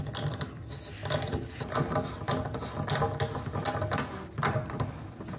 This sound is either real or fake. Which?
real